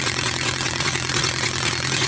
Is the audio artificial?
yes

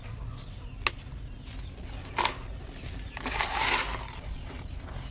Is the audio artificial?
no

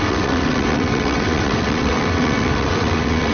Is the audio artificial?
yes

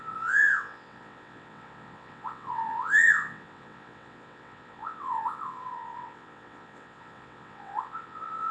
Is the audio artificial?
yes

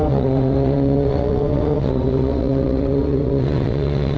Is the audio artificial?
yes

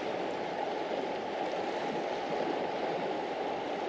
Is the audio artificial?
no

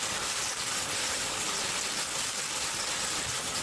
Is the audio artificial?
no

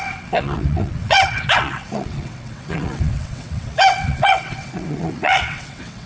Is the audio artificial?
yes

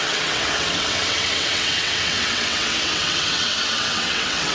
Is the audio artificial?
yes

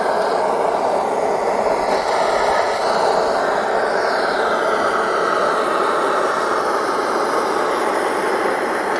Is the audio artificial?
no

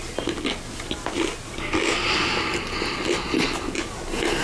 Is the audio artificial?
no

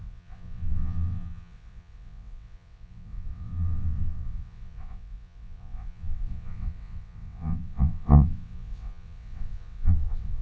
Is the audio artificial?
yes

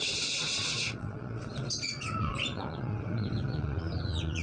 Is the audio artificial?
yes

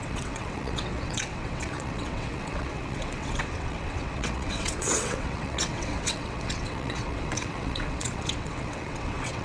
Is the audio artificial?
yes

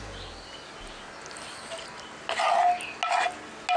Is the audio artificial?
no